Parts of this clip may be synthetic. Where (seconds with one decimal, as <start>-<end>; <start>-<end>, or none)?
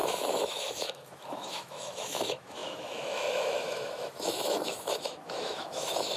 0.0-6.2